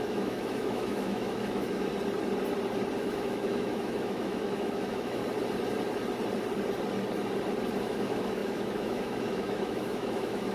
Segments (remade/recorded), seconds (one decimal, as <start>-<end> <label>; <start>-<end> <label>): 0.0-1.9 remade; 1.9-3.0 recorded; 3.0-5.2 remade; 5.2-7.8 recorded; 7.8-10.5 remade